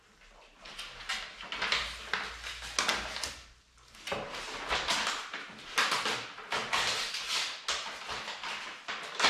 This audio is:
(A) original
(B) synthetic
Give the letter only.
A